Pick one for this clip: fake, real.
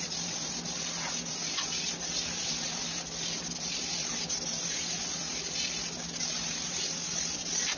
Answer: real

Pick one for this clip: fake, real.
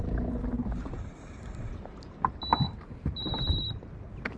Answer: real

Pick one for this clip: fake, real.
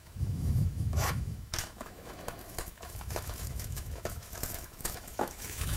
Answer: fake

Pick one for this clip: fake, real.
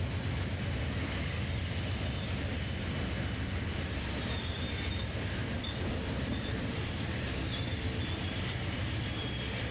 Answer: real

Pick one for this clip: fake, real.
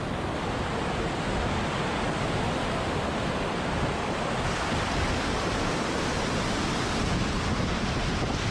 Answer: real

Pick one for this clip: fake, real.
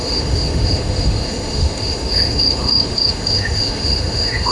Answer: fake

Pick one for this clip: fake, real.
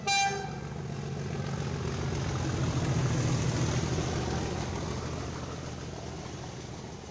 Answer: real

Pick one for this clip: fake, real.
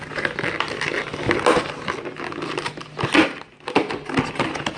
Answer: real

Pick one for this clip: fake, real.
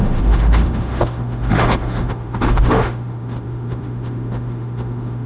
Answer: fake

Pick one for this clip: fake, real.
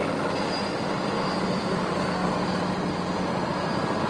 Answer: real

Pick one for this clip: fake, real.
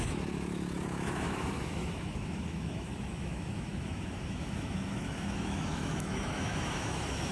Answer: fake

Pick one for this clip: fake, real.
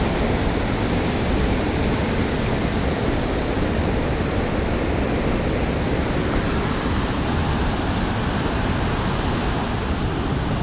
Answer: real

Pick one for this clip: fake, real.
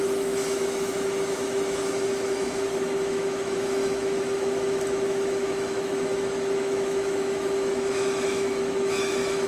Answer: fake